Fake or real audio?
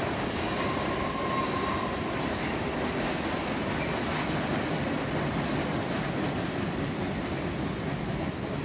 real